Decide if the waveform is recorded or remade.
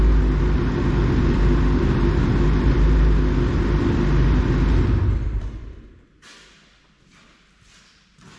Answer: recorded